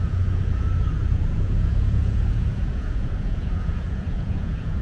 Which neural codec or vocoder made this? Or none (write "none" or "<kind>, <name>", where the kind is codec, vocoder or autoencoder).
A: vocoder, Vocos